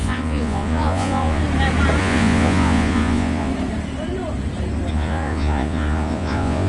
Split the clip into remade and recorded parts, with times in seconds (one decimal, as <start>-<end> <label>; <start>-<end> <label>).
0.0-1.4 remade; 1.4-2.0 recorded; 2.0-3.5 remade; 3.5-4.9 recorded; 4.9-6.7 remade